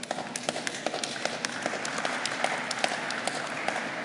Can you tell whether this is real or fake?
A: real